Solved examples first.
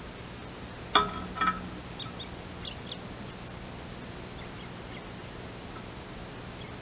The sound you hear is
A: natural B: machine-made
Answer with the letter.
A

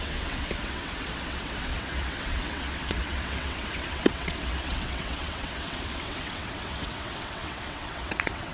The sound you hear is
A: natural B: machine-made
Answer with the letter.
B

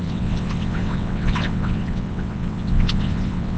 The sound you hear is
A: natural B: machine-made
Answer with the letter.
B